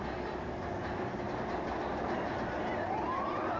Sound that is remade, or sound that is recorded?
recorded